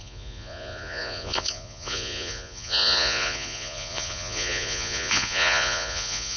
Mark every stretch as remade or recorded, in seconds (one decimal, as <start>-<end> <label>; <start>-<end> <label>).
0.0-6.4 remade

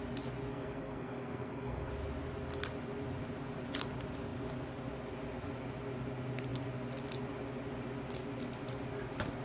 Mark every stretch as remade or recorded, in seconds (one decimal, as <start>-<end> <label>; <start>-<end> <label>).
0.0-0.5 recorded; 0.5-1.9 remade; 1.9-9.4 recorded

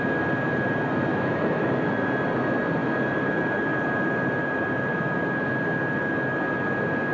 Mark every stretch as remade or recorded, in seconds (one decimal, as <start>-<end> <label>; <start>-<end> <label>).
0.0-1.1 recorded; 1.1-1.9 remade; 1.9-7.1 recorded